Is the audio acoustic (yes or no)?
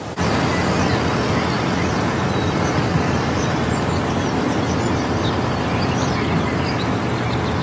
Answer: yes